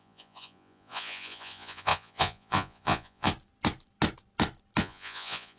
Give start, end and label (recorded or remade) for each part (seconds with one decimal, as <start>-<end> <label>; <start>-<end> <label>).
0.0-3.3 remade; 3.3-4.8 recorded; 4.8-5.6 remade